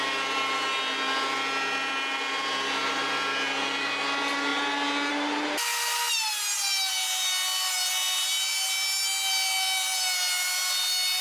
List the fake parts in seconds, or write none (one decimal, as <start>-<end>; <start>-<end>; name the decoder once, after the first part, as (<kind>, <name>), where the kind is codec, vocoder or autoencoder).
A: none